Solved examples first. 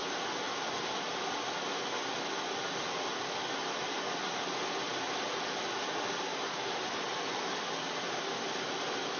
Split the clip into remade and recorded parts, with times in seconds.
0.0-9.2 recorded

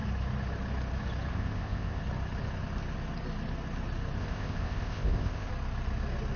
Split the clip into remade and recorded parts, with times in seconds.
0.0-1.3 recorded; 1.3-2.0 remade; 2.0-4.2 recorded; 4.2-5.5 remade; 5.5-6.4 recorded

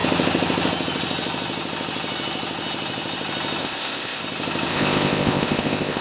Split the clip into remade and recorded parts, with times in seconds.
0.0-3.6 recorded; 3.6-4.2 remade; 4.2-4.7 recorded; 4.7-6.0 remade

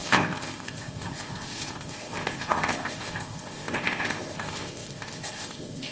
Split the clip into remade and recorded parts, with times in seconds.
0.0-5.9 remade

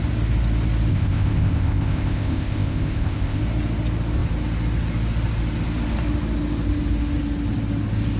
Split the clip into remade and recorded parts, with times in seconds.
0.0-0.9 recorded; 0.9-3.4 remade; 3.4-8.2 recorded